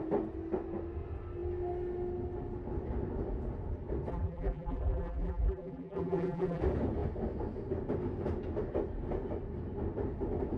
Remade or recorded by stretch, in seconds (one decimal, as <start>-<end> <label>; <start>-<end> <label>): 0.0-4.1 recorded; 4.1-6.6 remade; 6.6-10.6 recorded